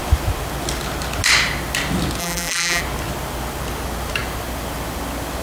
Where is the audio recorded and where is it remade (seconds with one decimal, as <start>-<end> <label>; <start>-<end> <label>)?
0.0-2.2 recorded; 2.2-2.8 remade; 2.8-5.4 recorded